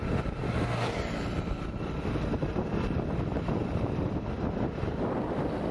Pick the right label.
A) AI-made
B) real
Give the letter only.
B